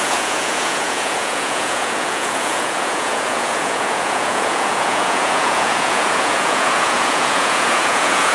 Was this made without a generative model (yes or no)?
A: no